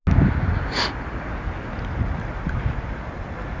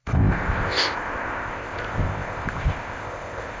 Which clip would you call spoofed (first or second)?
second